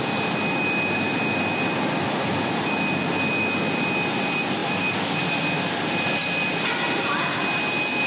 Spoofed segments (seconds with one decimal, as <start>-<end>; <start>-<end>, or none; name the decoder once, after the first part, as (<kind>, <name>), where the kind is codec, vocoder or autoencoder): none